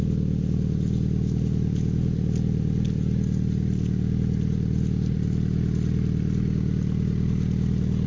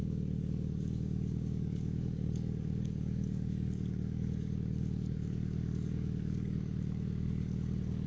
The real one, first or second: first